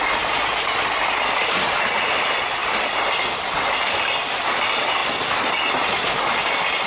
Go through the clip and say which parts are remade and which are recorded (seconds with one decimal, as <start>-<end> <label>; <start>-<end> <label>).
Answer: 0.0-6.9 recorded